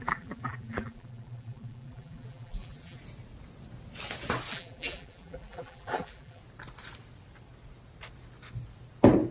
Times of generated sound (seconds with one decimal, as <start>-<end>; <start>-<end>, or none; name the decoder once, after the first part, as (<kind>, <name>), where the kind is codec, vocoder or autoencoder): 0.0-3.0 (vocoder, BigVGAN v2); 4.5-6.4